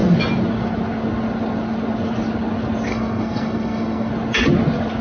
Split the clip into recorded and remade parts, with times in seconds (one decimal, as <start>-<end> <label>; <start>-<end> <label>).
0.0-2.9 recorded; 2.9-4.1 remade; 4.1-5.0 recorded